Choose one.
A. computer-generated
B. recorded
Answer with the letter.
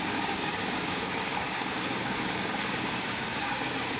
A